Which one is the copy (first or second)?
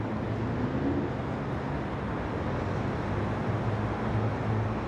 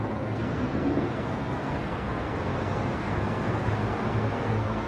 second